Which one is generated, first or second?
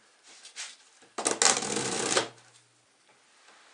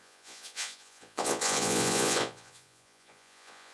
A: second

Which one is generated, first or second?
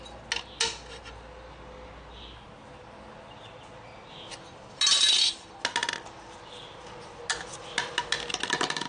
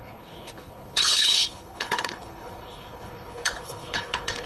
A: second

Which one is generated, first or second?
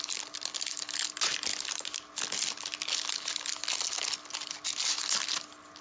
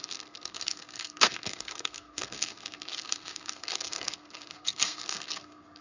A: second